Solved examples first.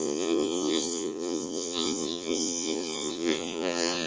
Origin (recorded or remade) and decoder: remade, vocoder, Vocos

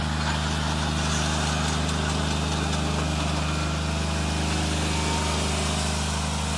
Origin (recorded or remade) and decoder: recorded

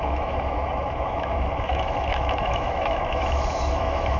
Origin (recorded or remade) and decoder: remade, autoencoder, DAC-VAE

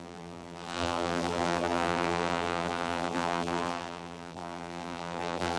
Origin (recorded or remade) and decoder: remade, vocoder, BigVGAN v2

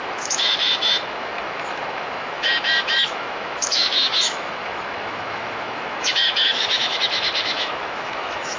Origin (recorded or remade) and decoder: remade, autoencoder, DAC-VAE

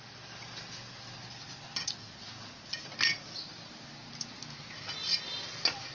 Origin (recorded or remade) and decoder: recorded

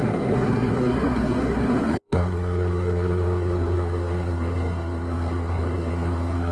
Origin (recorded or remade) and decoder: remade, codec, SNAC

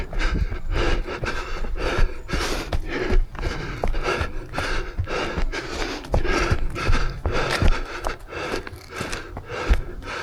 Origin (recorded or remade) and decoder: recorded